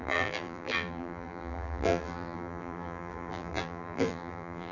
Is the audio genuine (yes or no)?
no